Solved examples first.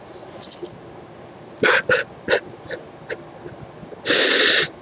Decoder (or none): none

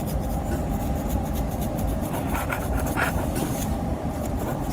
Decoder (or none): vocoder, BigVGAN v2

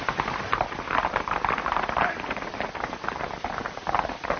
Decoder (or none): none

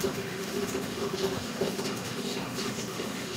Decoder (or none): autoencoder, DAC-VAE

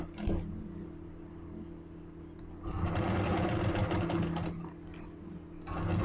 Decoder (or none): none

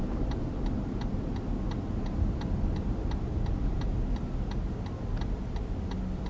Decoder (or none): none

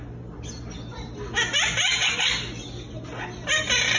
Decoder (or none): none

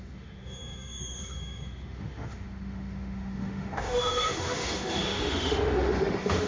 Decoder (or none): autoencoder, DAC-VAE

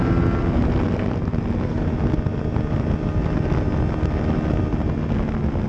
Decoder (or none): none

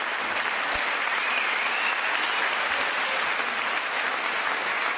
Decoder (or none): none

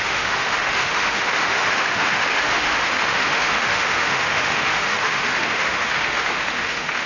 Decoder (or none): autoencoder, DAC-VAE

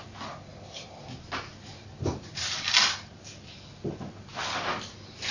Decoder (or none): none